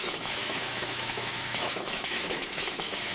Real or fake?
fake